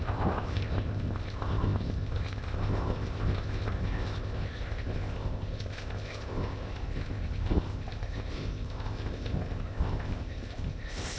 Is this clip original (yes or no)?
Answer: no